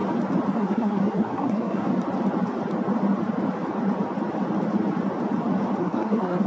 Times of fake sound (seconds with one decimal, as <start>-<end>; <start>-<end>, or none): 0.5-1.9; 5.8-6.5